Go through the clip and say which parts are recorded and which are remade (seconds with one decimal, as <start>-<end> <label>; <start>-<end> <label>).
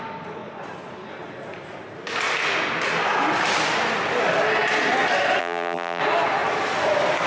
0.0-5.4 recorded; 5.4-6.0 remade; 6.0-7.3 recorded